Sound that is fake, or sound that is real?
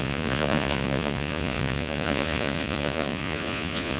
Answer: fake